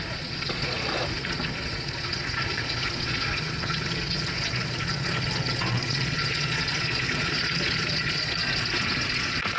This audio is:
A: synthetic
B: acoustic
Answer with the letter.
A